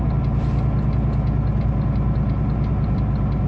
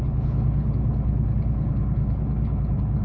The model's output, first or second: second